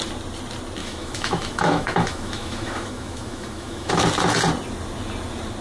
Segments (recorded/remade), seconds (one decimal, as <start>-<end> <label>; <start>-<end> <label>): 0.0-0.8 recorded; 0.8-3.9 remade; 3.9-5.6 recorded